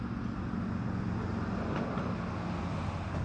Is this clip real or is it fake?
real